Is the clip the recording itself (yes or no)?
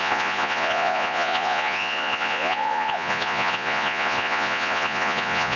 no